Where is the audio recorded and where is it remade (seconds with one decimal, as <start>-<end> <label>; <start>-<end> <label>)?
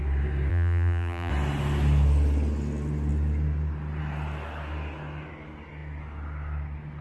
0.0-0.5 recorded; 0.5-1.3 remade; 1.3-7.0 recorded